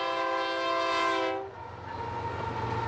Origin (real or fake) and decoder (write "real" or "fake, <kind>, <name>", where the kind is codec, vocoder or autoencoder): real